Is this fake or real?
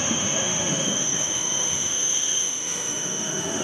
fake